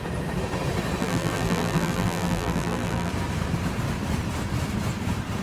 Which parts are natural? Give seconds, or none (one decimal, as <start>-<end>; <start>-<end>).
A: 0.0-1.0; 3.1-5.4